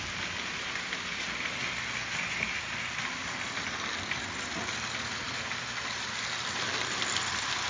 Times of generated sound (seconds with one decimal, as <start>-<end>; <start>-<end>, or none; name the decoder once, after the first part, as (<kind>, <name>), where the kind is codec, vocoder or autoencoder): none